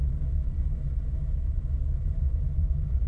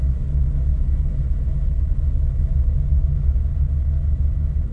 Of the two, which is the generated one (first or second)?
first